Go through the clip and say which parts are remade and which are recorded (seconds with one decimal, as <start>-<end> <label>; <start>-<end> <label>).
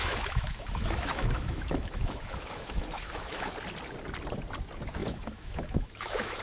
0.0-3.5 remade; 3.5-5.0 recorded; 5.0-6.4 remade